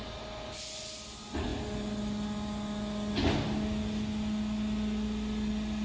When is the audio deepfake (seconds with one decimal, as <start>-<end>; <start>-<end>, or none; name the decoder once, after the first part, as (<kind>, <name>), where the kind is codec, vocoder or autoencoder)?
none